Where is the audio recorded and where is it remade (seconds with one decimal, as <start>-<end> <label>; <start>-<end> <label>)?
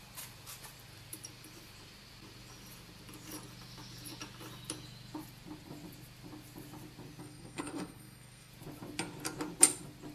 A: 0.0-7.2 recorded; 7.2-8.5 remade; 8.5-10.1 recorded